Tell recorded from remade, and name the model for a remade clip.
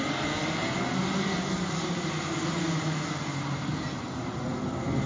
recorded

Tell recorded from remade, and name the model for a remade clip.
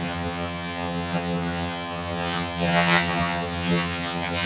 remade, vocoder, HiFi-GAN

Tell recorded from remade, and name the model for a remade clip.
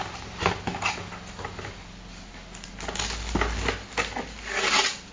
recorded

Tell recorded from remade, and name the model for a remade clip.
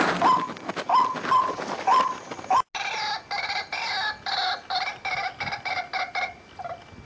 recorded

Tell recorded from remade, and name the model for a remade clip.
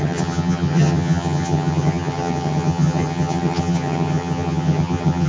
remade, vocoder, HiFi-GAN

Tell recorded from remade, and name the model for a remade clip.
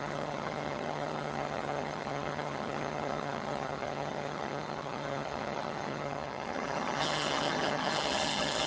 remade, vocoder, HiFi-GAN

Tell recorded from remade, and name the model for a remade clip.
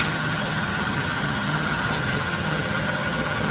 remade, vocoder, HiFi-GAN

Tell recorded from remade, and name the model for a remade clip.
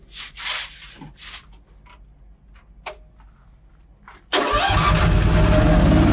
recorded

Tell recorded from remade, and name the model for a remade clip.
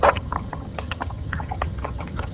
remade, vocoder, HiFi-GAN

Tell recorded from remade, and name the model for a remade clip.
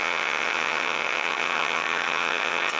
remade, vocoder, HiFi-GAN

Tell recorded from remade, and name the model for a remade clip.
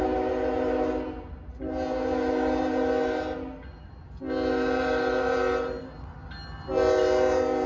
recorded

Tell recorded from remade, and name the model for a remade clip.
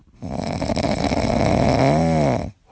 recorded